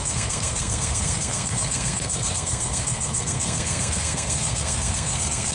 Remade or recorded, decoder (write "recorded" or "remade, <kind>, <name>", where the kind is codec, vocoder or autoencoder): remade, codec, SNAC